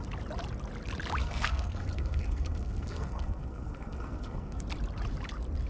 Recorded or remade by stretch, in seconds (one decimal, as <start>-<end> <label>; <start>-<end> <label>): 0.0-1.2 recorded; 1.2-4.6 remade; 4.6-5.7 recorded